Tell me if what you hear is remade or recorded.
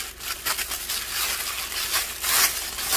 recorded